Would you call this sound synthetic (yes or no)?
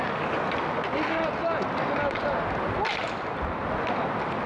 no